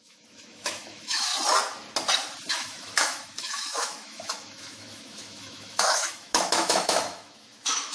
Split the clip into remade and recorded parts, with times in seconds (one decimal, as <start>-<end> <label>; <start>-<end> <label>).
0.0-1.3 remade; 1.3-2.5 recorded; 2.5-7.9 remade